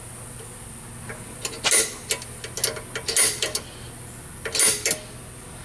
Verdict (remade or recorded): recorded